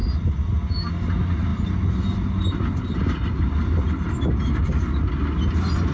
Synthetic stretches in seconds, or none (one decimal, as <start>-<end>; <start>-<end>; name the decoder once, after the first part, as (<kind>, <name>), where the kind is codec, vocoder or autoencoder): none